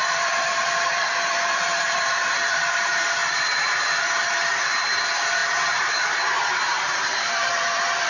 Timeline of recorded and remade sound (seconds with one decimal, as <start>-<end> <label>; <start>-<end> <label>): 0.0-8.1 remade